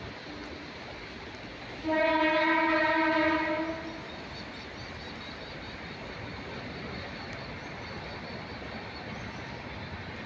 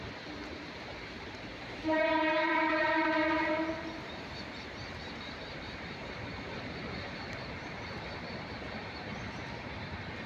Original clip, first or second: first